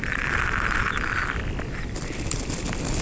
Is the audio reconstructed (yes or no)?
no